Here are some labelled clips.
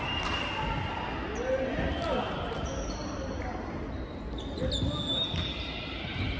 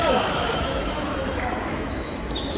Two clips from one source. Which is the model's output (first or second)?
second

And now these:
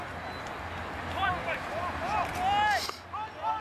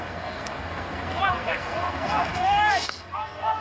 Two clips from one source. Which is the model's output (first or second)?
second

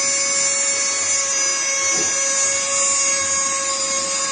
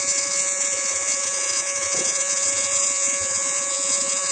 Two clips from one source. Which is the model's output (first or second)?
second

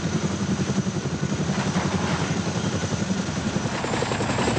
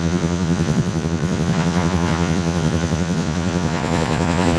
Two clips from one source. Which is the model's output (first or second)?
second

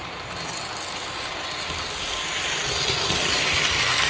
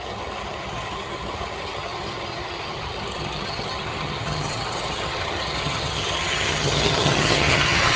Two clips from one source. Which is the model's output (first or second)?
second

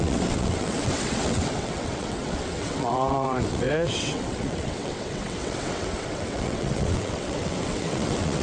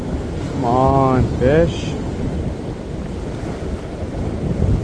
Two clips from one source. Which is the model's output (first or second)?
first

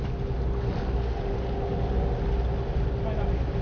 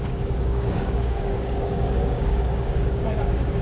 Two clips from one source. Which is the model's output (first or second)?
second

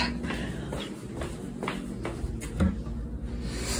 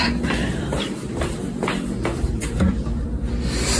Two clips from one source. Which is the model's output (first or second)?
second